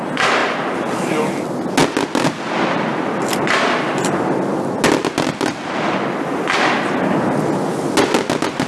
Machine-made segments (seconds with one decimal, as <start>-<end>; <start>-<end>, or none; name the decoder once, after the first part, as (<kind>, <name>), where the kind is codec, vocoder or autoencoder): none